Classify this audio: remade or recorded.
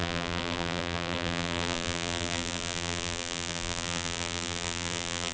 remade